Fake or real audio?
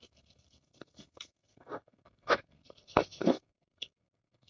fake